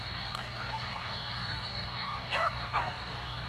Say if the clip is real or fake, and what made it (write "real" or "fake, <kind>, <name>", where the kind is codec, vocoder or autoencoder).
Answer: fake, codec, DAC